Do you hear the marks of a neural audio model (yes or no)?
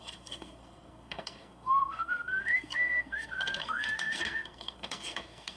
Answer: yes